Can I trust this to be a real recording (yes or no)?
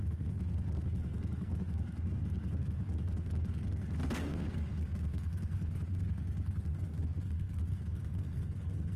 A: no